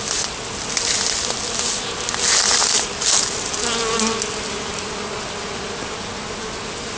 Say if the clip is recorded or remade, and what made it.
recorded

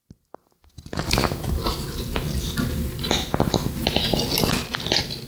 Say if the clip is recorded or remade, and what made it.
recorded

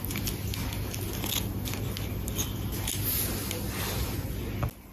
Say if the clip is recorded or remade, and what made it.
recorded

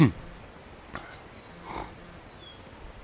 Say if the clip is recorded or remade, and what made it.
recorded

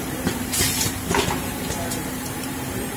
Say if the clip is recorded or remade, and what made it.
remade, vocoder, BigVGAN v2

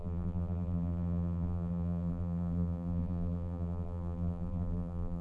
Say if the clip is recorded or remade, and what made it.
remade, vocoder, BigVGAN v2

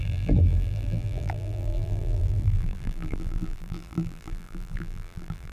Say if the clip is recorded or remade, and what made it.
remade, vocoder, BigVGAN v2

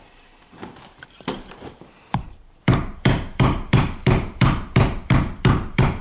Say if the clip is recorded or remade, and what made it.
remade, vocoder, BigVGAN v2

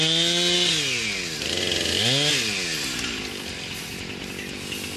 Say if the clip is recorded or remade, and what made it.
recorded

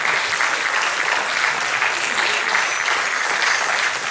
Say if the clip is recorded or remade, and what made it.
recorded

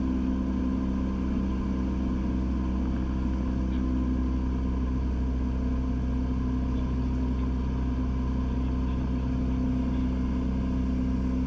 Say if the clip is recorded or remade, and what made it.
recorded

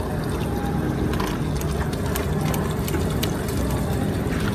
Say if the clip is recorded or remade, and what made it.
recorded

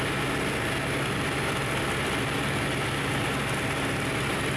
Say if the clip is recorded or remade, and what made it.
recorded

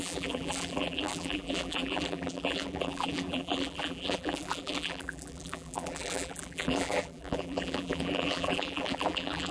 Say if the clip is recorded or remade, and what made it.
remade, vocoder, BigVGAN v2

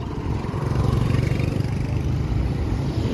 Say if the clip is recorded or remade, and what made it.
remade, vocoder, BigVGAN v2